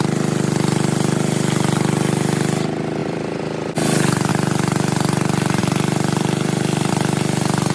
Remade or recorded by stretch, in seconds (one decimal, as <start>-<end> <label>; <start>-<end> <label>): 0.0-3.0 recorded; 3.0-4.3 remade; 4.3-5.6 recorded; 5.6-6.9 remade; 6.9-7.7 recorded